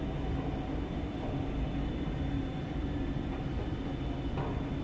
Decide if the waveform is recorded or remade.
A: recorded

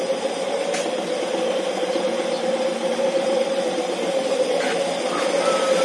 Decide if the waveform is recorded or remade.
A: recorded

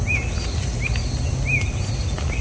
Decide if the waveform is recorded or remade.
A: recorded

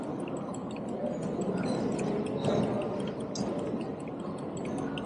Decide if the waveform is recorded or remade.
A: recorded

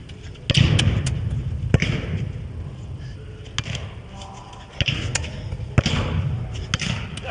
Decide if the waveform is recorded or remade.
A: recorded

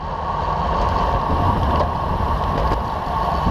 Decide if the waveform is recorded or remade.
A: recorded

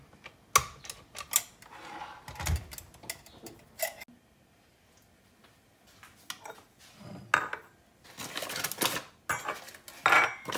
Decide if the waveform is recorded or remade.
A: recorded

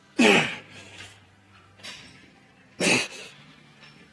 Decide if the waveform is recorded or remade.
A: remade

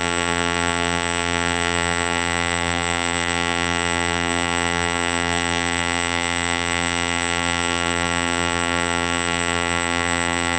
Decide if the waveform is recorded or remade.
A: remade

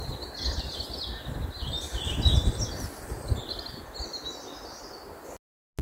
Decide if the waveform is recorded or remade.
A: recorded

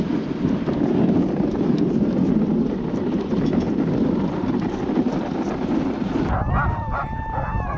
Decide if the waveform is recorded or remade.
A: remade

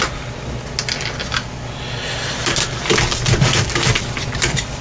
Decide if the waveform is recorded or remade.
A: recorded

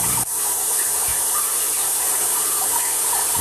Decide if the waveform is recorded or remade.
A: remade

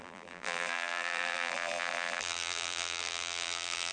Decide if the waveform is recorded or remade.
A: remade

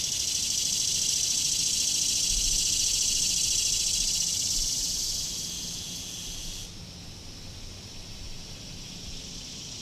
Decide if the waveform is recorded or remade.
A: recorded